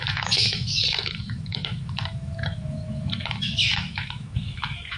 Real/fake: fake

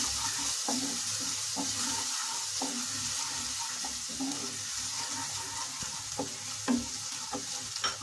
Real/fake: real